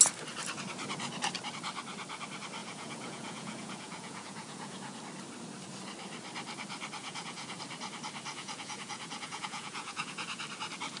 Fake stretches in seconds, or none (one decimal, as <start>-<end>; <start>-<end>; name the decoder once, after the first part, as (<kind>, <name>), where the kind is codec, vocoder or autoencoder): 2.6-5.0 (vocoder, Vocos); 7.0-7.6; 8.3-10.4